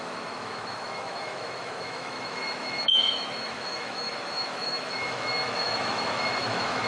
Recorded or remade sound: remade